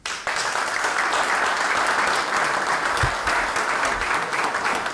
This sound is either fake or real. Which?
fake